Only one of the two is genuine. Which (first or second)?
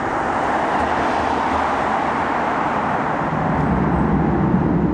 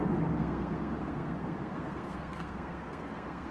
first